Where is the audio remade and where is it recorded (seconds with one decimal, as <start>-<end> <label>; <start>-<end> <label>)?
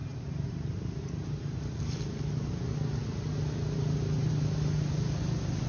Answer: 0.0-5.7 recorded